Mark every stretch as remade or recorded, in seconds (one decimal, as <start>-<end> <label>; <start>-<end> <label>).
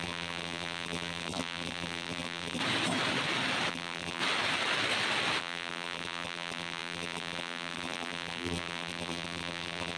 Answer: 0.0-2.6 remade; 2.6-3.7 recorded; 3.7-4.2 remade; 4.2-5.4 recorded; 5.4-10.0 remade